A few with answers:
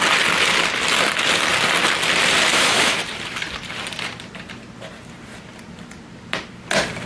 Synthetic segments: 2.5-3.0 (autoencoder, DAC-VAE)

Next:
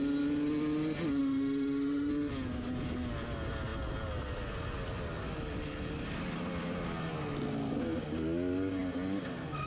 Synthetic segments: 1.2-2.1 (autoencoder, DAC-VAE)